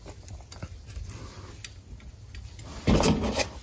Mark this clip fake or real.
real